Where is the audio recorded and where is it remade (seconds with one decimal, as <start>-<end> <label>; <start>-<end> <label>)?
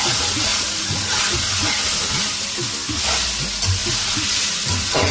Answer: 0.0-0.5 recorded; 0.5-1.2 remade; 1.2-5.1 recorded